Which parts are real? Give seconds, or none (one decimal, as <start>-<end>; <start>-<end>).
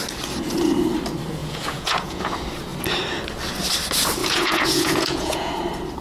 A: 0.0-1.4; 2.3-4.2; 5.5-6.0